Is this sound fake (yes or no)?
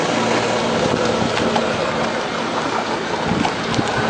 no